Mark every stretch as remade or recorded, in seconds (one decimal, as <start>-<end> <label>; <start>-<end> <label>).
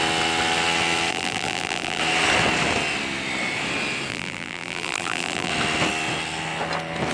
0.0-1.1 recorded; 1.1-2.0 remade; 2.0-4.1 recorded; 4.1-5.5 remade; 5.5-7.1 recorded